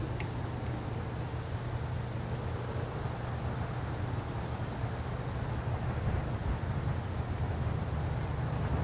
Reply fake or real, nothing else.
real